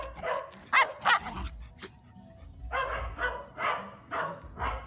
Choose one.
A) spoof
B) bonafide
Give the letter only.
B